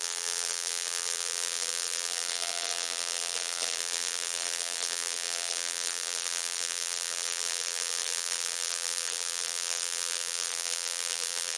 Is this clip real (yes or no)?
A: no